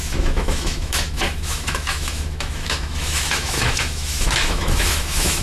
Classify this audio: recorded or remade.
remade